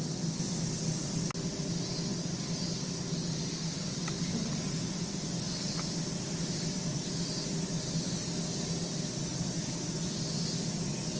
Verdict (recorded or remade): recorded